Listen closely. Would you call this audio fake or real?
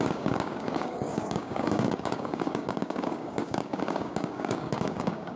fake